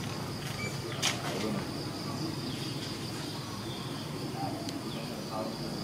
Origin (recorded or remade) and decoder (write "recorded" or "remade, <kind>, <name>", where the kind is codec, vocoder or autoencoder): recorded